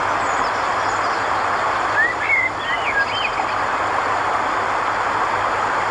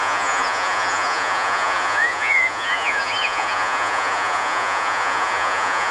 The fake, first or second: second